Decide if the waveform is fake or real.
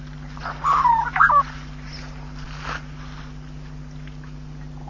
real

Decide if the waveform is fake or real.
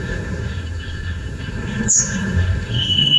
fake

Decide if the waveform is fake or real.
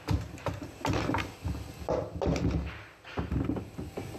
real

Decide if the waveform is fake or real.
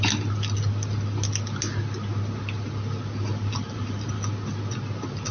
real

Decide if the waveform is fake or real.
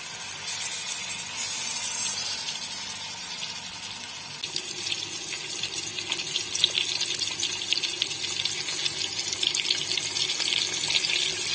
real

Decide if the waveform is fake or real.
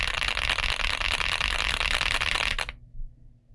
real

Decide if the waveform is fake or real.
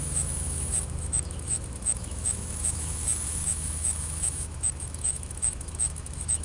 fake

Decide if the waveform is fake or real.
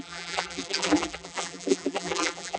fake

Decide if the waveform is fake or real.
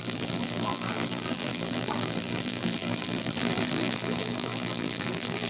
fake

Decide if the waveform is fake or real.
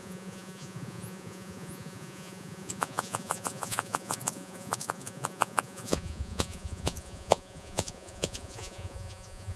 fake